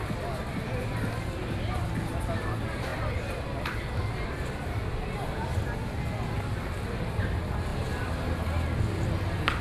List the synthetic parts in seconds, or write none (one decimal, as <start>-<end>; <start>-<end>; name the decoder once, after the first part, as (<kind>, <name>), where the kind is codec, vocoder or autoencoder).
none